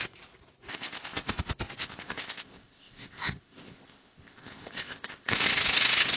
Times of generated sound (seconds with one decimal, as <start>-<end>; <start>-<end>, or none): 0.7-1.4; 1.8-5.5